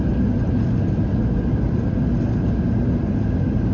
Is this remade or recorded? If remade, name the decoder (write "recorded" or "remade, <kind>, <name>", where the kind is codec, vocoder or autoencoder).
recorded